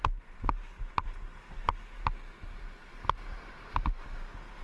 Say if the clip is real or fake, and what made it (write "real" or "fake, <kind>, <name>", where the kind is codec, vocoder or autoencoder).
real